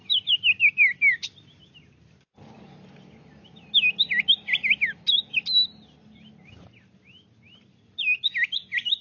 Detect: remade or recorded recorded